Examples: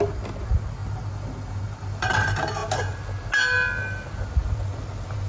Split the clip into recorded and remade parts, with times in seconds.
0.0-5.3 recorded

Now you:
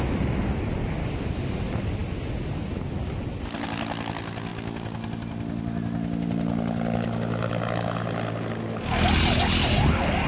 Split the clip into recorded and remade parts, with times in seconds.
0.0-10.3 recorded